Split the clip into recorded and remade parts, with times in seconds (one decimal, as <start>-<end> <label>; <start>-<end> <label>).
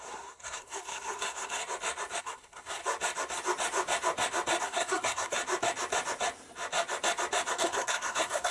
0.0-1.6 remade; 1.6-2.2 recorded; 2.2-2.8 remade; 2.8-4.6 recorded; 4.6-5.4 remade; 5.4-7.5 recorded; 7.5-8.5 remade